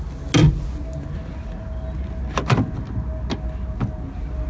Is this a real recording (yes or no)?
yes